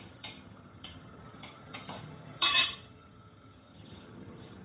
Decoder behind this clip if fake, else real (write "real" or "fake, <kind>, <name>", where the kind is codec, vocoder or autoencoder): fake, vocoder, HiFi-GAN